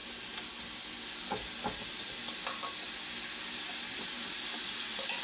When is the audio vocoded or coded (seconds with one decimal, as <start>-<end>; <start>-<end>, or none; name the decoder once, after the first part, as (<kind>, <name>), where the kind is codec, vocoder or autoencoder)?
none